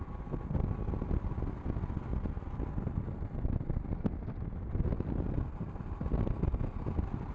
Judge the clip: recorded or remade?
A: recorded